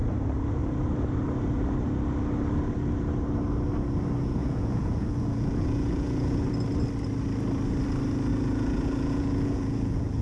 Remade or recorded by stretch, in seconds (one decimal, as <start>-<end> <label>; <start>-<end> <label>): 0.0-4.4 recorded; 4.4-6.4 remade; 6.4-8.3 recorded; 8.3-10.2 remade